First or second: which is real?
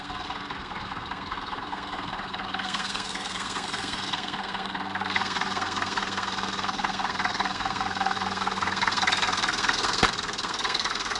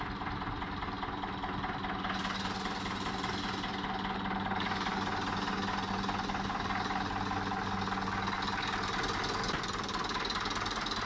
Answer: second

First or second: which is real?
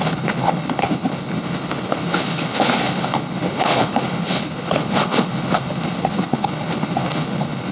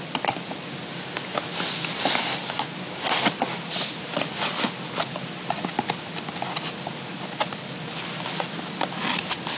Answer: second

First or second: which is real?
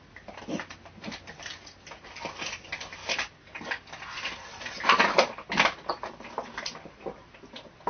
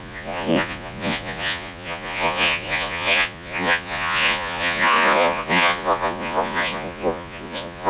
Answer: first